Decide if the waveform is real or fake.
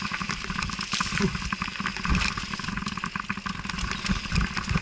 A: real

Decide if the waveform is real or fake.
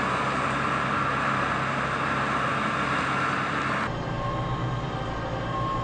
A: real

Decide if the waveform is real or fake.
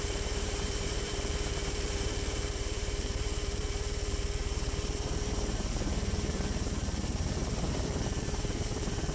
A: fake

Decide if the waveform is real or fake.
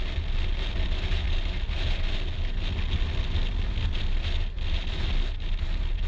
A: real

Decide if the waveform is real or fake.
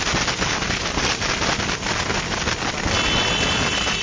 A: real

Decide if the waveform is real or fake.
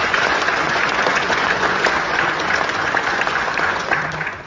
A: fake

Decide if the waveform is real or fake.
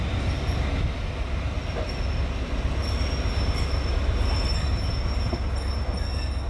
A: real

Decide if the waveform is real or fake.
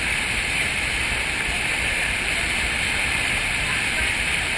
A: fake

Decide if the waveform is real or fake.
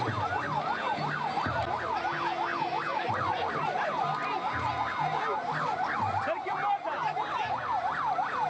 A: real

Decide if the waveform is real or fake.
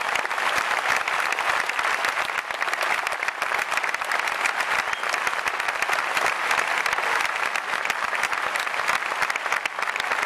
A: real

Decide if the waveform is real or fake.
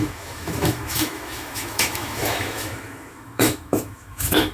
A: fake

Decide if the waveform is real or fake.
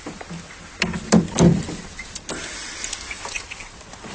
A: real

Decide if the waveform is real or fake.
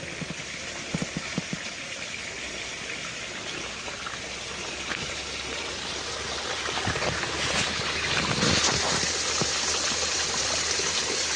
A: real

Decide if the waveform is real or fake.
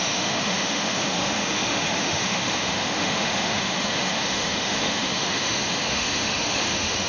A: fake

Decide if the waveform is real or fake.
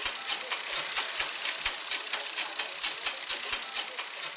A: real